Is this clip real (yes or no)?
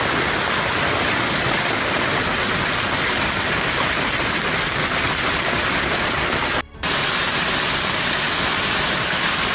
yes